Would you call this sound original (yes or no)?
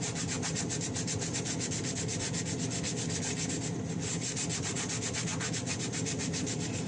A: yes